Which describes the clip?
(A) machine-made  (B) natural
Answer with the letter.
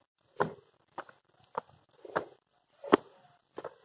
B